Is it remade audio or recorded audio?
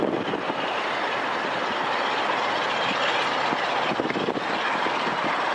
remade